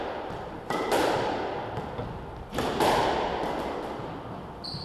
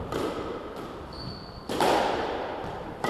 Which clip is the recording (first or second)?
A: first